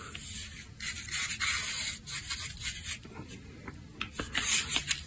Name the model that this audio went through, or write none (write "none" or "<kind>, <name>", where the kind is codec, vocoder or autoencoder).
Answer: none